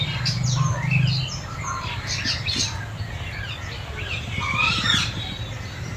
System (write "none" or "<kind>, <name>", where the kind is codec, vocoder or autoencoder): none